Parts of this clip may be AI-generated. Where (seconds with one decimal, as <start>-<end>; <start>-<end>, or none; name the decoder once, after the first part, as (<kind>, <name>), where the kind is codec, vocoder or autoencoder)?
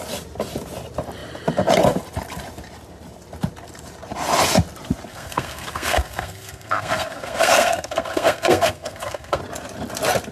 5.1-9.4 (codec, SNAC)